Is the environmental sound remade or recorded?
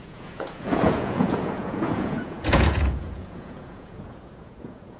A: remade